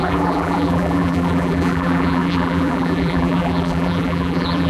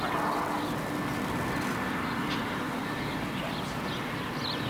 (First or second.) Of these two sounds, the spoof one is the first